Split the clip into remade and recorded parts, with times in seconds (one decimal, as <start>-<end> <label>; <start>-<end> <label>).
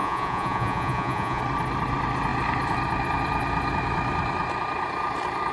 0.0-1.4 remade; 1.4-5.5 recorded